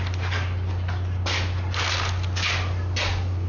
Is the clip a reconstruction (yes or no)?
no